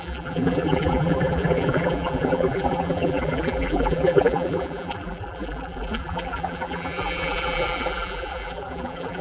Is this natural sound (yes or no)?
no